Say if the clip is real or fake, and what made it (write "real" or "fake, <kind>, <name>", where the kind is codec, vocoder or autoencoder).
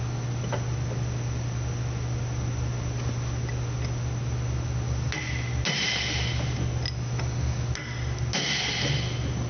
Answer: real